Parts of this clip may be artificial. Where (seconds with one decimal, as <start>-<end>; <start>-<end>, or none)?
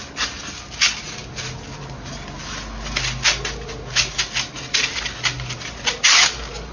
none